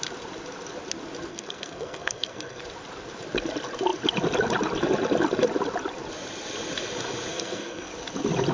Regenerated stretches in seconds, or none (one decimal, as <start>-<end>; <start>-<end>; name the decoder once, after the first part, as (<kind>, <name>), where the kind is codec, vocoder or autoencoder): 1.3-2.6 (codec, SNAC); 7.3-7.9